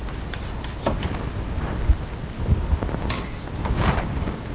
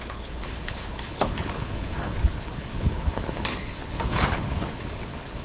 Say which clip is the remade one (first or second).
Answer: second